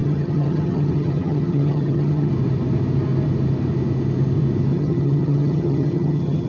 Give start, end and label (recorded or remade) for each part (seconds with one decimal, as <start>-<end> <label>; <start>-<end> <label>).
0.0-2.3 remade; 2.3-4.7 recorded; 4.7-6.5 remade